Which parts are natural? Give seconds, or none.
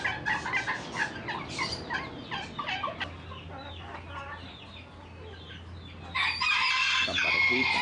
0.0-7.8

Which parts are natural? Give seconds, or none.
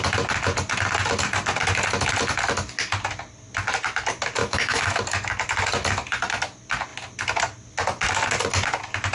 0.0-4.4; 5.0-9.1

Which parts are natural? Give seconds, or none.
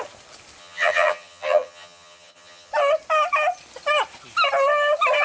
0.0-0.6; 2.7-5.2